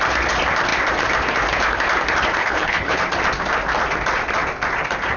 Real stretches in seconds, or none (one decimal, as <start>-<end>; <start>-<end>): 0.0-2.4; 3.0-5.2